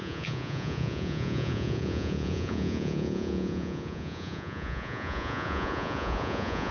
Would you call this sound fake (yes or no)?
yes